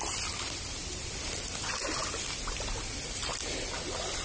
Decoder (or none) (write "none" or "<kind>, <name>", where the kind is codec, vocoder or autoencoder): none